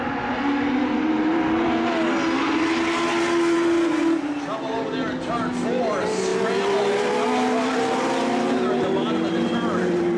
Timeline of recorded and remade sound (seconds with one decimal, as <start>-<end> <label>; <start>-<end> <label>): 0.0-10.2 recorded